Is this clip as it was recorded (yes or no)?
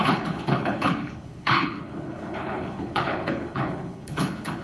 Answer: no